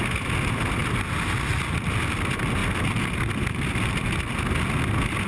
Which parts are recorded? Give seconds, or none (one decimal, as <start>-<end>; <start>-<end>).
0.0-5.3